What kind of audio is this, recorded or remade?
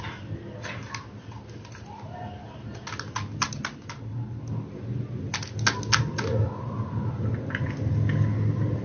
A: recorded